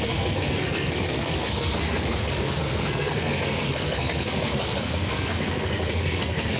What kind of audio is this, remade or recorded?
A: remade